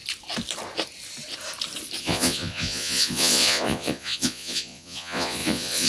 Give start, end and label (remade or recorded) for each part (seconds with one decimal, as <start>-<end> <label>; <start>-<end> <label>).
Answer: 0.0-2.0 recorded; 2.0-5.9 remade